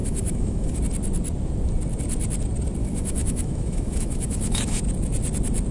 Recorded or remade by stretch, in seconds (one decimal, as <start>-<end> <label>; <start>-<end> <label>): 0.0-0.8 remade; 0.8-2.8 recorded; 2.8-4.8 remade; 4.8-5.7 recorded